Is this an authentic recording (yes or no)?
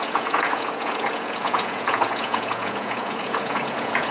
no